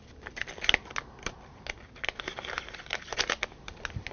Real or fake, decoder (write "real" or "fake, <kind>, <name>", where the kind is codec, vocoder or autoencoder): real